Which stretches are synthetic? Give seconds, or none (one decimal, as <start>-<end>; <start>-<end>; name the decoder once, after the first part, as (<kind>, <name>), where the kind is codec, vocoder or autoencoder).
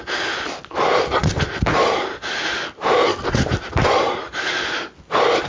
none